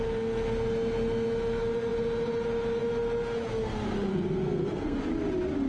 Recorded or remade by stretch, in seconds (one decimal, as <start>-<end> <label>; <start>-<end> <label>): 0.0-4.1 recorded; 4.1-5.0 remade; 5.0-5.7 recorded